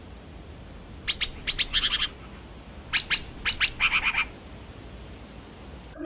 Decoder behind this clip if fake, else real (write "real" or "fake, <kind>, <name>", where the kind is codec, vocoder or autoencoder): real